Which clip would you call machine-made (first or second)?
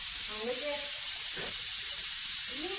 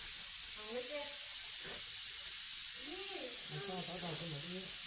first